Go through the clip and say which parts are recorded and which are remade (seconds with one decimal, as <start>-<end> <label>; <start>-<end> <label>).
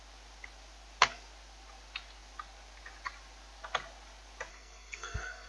0.0-4.5 recorded; 4.5-5.5 remade